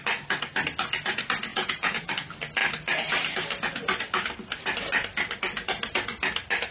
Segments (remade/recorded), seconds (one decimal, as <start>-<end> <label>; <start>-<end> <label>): 0.0-1.5 recorded; 1.5-2.1 remade; 2.1-6.7 recorded